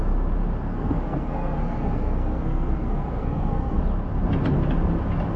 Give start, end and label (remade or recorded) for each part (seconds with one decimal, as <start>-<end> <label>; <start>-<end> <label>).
0.0-0.6 recorded; 0.6-3.8 remade; 3.8-5.4 recorded

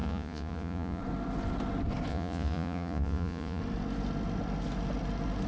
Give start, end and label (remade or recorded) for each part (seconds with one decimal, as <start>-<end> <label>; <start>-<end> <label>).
0.0-1.0 remade; 1.0-2.1 recorded; 2.1-3.6 remade; 3.6-5.5 recorded

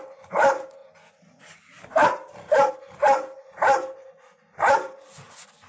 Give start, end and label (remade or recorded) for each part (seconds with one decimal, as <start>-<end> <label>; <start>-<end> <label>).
0.0-5.7 recorded

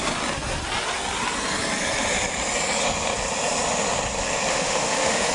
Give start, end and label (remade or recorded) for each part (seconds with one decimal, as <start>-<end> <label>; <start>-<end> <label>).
0.0-4.5 recorded; 4.5-5.3 remade

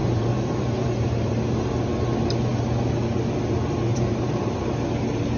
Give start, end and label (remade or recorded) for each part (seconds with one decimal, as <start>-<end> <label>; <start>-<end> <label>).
0.0-1.7 remade; 1.7-3.9 recorded; 3.9-4.6 remade; 4.6-5.4 recorded

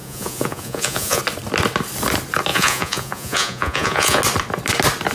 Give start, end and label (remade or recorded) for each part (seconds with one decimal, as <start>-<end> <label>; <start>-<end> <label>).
0.0-1.2 remade; 1.2-2.5 recorded; 2.5-4.2 remade; 4.2-5.1 recorded

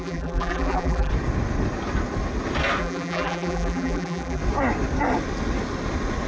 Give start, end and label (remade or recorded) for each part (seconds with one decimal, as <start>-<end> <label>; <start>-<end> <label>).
0.0-1.1 remade; 1.1-2.8 recorded; 2.8-4.4 remade; 4.4-6.3 recorded